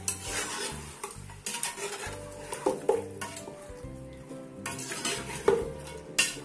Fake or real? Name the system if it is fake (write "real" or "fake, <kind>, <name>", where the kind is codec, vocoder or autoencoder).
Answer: real